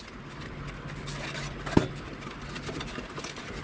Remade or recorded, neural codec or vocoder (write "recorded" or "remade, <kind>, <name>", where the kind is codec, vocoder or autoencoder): recorded